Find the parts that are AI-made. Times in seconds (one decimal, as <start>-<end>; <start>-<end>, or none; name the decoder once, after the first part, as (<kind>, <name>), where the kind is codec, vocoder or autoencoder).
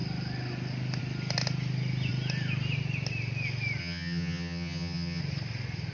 3.8-5.2 (vocoder, HiFi-GAN)